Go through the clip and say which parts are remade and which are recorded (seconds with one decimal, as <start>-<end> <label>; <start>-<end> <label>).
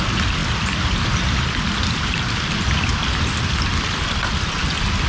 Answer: 0.0-5.1 recorded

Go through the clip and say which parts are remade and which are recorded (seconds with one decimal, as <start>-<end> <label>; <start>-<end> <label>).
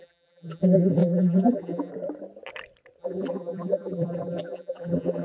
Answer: 0.0-1.9 remade; 1.9-3.0 recorded; 3.0-5.2 remade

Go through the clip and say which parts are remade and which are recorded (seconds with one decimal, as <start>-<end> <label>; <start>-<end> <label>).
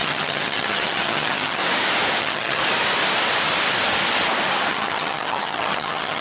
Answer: 0.0-1.6 remade; 1.6-2.2 recorded; 2.2-2.6 remade; 2.6-4.7 recorded; 4.7-6.2 remade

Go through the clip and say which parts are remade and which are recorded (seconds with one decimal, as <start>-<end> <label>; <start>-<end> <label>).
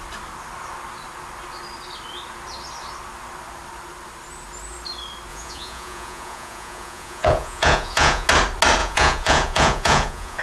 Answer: 0.0-5.3 recorded; 5.3-8.3 remade; 8.3-8.8 recorded; 8.8-10.4 remade